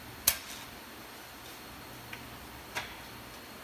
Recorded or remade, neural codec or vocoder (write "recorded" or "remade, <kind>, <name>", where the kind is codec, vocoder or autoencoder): recorded